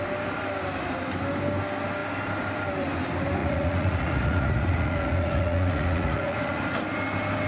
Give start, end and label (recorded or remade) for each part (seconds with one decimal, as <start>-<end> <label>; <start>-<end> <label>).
0.0-3.4 recorded; 3.4-6.6 remade; 6.6-7.5 recorded